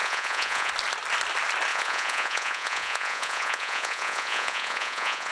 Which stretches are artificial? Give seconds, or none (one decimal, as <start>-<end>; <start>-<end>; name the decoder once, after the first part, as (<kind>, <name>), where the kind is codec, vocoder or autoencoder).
0.0-0.7 (vocoder, Vocos); 1.7-5.3